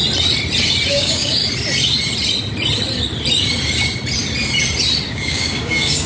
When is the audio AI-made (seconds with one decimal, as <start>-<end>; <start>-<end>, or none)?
0.9-1.4; 5.1-6.1